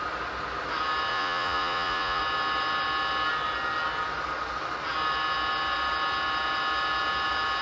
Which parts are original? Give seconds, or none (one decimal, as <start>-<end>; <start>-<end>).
0.0-1.1; 2.2-7.6